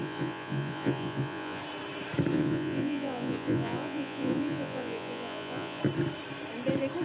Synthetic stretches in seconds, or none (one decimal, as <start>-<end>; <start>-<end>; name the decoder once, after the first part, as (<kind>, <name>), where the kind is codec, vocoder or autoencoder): 0.0-1.6 (vocoder, Vocos); 2.3-5.8